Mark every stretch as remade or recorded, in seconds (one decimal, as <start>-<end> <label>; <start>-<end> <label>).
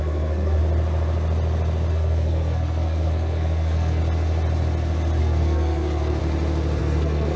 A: 0.0-0.6 remade; 0.6-1.9 recorded; 1.9-4.0 remade; 4.0-5.2 recorded; 5.2-6.2 remade; 6.2-6.8 recorded; 6.8-7.4 remade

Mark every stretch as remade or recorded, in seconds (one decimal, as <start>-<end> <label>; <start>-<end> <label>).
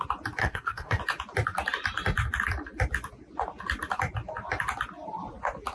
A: 0.0-0.4 recorded; 0.4-1.0 remade; 1.0-5.7 recorded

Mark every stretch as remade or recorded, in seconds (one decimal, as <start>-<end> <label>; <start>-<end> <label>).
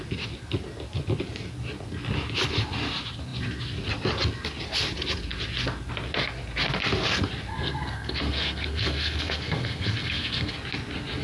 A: 0.0-7.5 recorded; 7.5-10.5 remade; 10.5-11.2 recorded